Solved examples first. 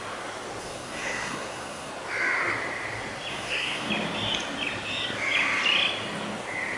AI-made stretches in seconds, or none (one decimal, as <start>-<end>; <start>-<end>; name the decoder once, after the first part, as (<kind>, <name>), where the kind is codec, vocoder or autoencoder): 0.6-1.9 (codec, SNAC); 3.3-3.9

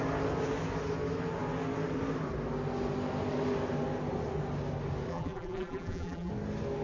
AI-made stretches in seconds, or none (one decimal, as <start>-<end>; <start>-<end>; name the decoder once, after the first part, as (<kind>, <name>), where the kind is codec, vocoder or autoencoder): 5.1-6.3 (vocoder, BigVGAN v2)

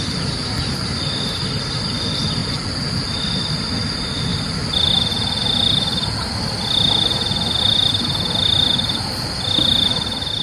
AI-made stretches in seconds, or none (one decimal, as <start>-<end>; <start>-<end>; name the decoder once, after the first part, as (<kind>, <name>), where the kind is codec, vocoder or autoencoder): 2.4-3.5 (vocoder, BigVGAN v2); 4.3-9.2

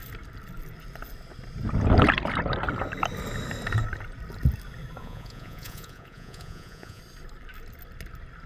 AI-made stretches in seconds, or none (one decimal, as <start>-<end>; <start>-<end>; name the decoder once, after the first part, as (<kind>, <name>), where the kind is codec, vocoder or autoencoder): 5.0-7.0 (vocoder, Vocos)